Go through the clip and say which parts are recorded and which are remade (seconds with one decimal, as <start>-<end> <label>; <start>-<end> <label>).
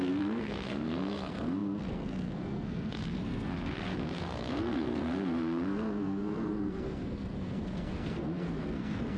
0.0-9.2 remade